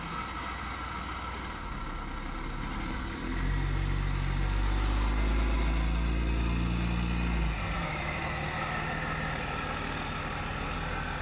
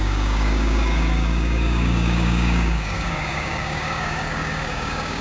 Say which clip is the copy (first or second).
second